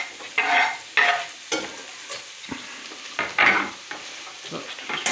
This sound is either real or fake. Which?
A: real